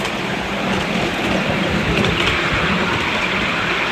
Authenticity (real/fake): real